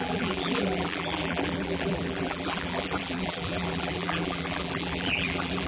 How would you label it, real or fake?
fake